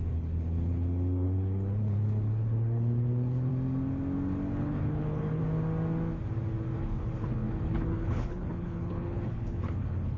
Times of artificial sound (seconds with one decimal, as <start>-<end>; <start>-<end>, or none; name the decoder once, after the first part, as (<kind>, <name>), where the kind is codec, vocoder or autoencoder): 0.0-3.5 (codec, HILCodec); 4.6-5.4; 6.8-10.2